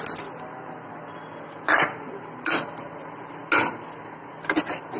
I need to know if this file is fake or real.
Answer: real